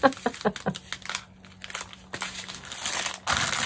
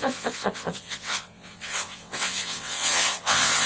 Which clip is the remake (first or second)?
second